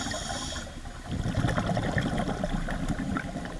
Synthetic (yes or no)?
no